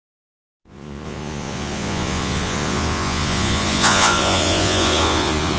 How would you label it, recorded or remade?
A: remade